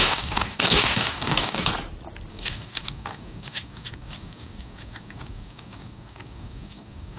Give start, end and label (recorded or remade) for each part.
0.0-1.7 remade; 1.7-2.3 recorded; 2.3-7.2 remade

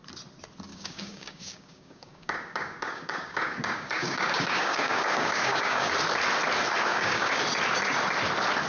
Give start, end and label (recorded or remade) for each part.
0.0-0.7 recorded; 0.7-5.9 remade; 5.9-6.9 recorded; 6.9-7.4 remade; 7.4-8.7 recorded

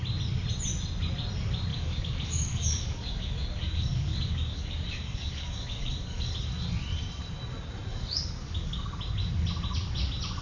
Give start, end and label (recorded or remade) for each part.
0.0-1.7 recorded; 1.7-6.3 remade; 6.3-7.9 recorded; 7.9-9.0 remade; 9.0-10.4 recorded

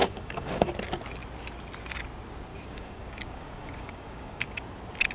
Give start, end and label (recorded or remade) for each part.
0.0-0.7 remade; 0.7-2.5 recorded; 2.5-4.6 remade; 4.6-5.1 recorded